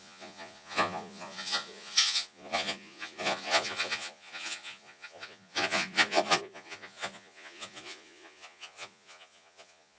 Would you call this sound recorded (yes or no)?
no